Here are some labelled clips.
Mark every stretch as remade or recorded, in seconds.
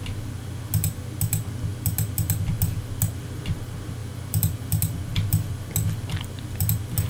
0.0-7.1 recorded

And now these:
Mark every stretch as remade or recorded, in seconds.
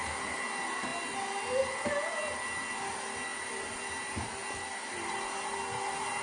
0.0-3.3 recorded; 3.3-4.0 remade; 4.0-6.2 recorded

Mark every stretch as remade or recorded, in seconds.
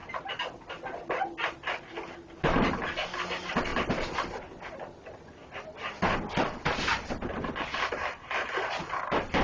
0.0-6.9 recorded; 6.9-7.4 remade; 7.4-9.4 recorded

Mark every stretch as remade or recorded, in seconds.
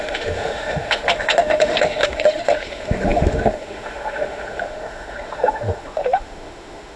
0.0-7.0 remade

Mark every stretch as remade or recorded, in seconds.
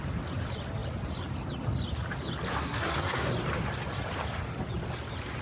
0.0-2.5 recorded; 2.5-3.3 remade; 3.3-5.4 recorded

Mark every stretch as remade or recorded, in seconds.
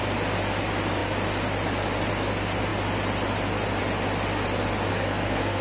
0.0-4.9 recorded; 4.9-5.6 remade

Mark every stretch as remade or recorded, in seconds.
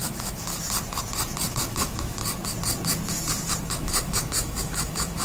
0.0-0.5 remade; 0.5-1.5 recorded; 1.5-2.2 remade; 2.2-3.6 recorded; 3.6-5.2 remade